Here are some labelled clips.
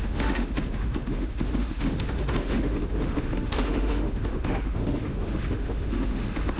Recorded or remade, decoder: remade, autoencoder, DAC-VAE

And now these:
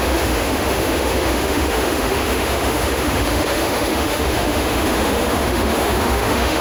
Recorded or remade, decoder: remade, autoencoder, DAC-VAE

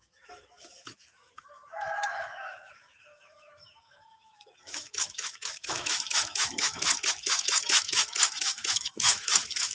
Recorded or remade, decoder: remade, autoencoder, DAC-VAE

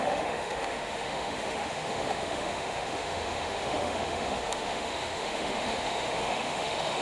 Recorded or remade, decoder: remade, autoencoder, DAC-VAE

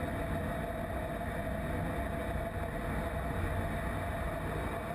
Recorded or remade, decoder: recorded